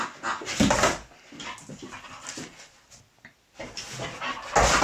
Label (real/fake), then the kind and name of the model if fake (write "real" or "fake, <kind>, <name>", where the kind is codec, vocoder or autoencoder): real